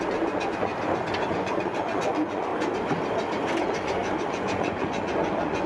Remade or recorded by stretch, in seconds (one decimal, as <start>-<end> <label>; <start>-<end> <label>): 0.0-0.7 remade; 0.7-1.3 recorded; 1.3-2.5 remade; 2.5-3.6 recorded; 3.6-5.7 remade